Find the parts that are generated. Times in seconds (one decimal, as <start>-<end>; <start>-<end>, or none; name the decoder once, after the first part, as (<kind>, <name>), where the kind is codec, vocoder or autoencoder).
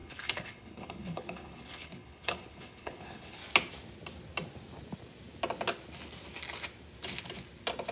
0.0-3.4 (codec, HILCodec)